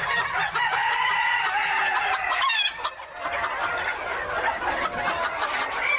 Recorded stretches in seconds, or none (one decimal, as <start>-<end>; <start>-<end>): 0.0-0.8; 2.9-6.0